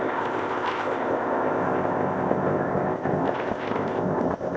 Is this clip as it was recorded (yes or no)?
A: no